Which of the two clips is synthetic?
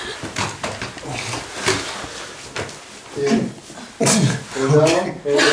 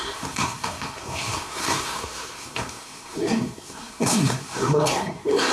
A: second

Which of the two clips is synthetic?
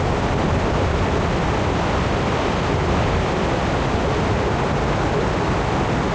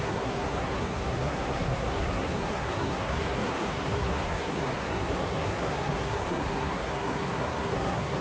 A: second